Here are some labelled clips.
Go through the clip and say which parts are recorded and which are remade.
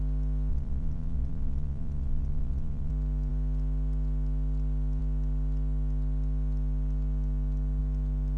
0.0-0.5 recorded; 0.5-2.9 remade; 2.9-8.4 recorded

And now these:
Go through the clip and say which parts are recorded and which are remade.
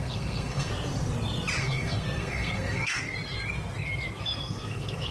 0.0-0.7 remade; 0.7-1.6 recorded; 1.6-3.0 remade; 3.0-4.2 recorded; 4.2-5.1 remade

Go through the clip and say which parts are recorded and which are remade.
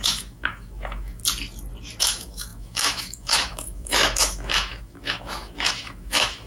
0.0-1.2 remade; 1.2-2.0 recorded; 2.0-6.5 remade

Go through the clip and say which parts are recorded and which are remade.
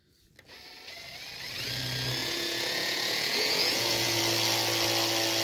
0.0-2.2 recorded; 2.2-4.2 remade; 4.2-5.4 recorded